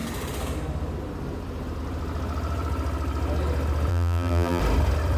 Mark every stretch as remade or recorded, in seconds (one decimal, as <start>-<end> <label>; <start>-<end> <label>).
0.0-3.9 recorded; 3.9-4.6 remade; 4.6-5.2 recorded